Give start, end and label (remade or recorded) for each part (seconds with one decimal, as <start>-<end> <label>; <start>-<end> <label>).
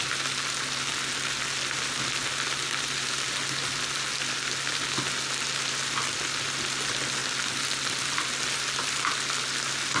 0.0-10.0 recorded